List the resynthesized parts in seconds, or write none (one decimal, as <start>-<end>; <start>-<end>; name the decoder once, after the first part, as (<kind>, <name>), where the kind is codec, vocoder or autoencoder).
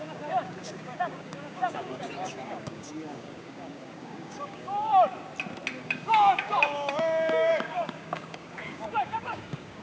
0.0-4.9 (codec, DAC); 5.8-9.8